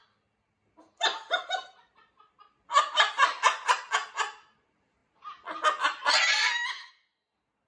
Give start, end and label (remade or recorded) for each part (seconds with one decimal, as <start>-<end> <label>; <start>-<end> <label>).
0.0-7.7 recorded